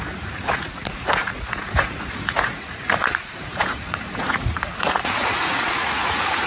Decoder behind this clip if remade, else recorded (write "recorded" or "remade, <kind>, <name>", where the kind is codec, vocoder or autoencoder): remade, vocoder, Vocos